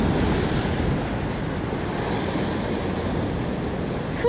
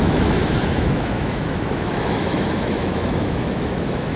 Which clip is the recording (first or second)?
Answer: first